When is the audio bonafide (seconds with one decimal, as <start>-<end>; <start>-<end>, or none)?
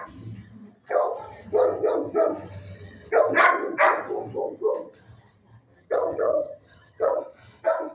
0.0-5.8; 7.2-7.9